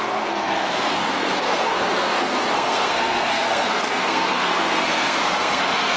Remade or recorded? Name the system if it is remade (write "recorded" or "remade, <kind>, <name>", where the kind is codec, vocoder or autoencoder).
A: remade, codec, SNAC